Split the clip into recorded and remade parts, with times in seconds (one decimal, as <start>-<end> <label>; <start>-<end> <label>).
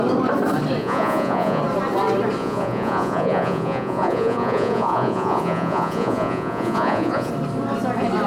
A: 0.0-0.8 recorded; 0.8-1.6 remade; 1.6-2.4 recorded; 2.4-7.3 remade; 7.3-8.3 recorded